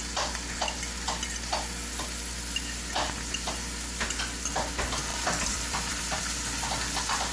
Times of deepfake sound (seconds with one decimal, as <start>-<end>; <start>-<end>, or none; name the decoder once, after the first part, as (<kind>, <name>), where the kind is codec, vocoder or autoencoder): 5.1-6.2 (vocoder, BigVGAN v2)